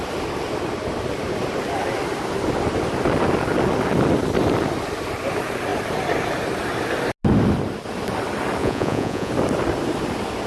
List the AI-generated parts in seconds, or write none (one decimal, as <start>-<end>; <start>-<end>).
8.6-9.3